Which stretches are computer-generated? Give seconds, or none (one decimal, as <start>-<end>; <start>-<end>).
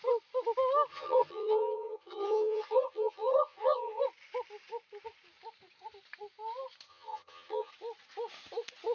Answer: 0.9-4.0; 6.9-7.7